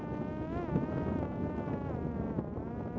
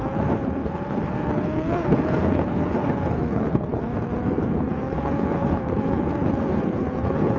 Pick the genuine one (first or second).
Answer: first